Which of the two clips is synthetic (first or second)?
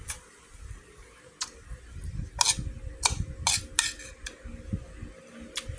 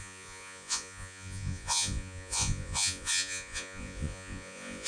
second